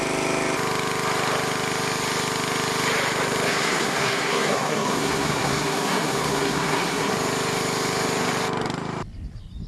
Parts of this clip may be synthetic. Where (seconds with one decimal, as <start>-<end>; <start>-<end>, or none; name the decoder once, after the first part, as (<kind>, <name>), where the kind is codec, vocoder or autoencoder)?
3.5-7.1 (codec, SNAC)